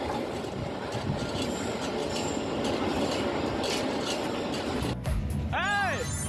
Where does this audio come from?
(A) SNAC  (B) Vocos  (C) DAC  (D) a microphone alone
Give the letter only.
D